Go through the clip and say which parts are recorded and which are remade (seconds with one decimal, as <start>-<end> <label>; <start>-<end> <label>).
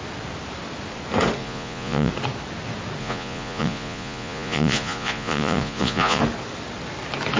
0.0-1.4 recorded; 1.4-2.1 remade; 2.1-3.0 recorded; 3.0-6.2 remade; 6.2-7.4 recorded